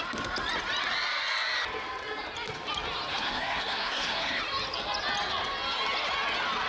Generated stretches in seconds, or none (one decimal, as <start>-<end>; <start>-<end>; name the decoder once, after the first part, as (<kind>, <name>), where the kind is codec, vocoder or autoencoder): 3.1-4.4 (codec, SNAC)